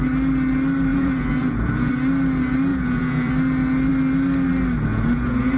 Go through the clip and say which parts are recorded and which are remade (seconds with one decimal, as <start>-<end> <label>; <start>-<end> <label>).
0.0-0.9 recorded; 0.9-1.9 remade; 1.9-2.7 recorded; 2.7-3.3 remade; 3.3-4.9 recorded; 4.9-5.6 remade